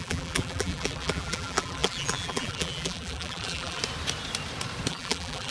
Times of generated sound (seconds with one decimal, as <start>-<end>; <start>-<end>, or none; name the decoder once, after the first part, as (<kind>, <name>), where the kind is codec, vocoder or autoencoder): 0.0-3.8 (vocoder, BigVGAN v2); 4.9-5.5